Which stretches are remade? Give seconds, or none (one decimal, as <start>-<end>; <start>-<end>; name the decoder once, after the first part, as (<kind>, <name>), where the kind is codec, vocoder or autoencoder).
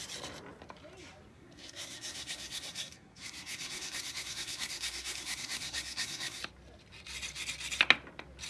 1.3-6.4 (codec, SNAC)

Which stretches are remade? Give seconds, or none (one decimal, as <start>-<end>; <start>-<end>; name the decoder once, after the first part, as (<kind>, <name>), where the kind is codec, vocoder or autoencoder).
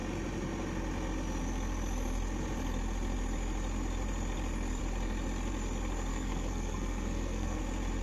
6.1-7.6 (codec, SNAC)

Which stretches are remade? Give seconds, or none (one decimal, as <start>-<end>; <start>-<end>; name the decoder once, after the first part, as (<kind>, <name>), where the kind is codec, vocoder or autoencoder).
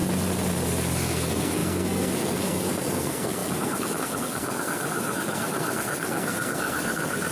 1.0-7.3 (codec, SNAC)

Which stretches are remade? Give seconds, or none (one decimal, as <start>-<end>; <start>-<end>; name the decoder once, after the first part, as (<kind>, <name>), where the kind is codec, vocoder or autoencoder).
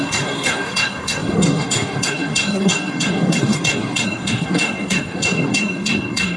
0.0-6.4 (codec, SNAC)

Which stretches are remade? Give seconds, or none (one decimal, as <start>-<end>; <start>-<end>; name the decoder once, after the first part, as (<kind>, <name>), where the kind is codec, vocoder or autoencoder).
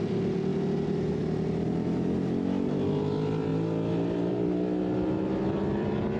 0.0-0.5 (vocoder, BigVGAN v2); 1.2-3.5; 4.3-6.2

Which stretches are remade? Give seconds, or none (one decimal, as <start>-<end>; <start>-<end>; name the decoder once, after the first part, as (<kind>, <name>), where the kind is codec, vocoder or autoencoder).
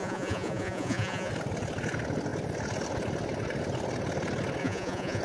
0.0-1.3 (vocoder, Vocos); 4.6-5.2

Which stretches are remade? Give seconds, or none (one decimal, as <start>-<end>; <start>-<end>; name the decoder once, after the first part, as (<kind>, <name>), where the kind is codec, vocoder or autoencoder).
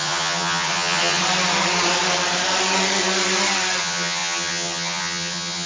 0.0-1.2 (vocoder, HiFi-GAN); 3.8-5.7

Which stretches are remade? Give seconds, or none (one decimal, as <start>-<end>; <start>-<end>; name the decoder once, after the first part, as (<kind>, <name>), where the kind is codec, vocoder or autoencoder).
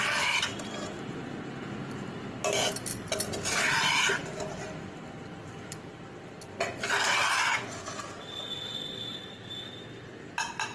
0.0-2.9 (vocoder, BigVGAN v2); 3.7-7.5; 8.2-10.7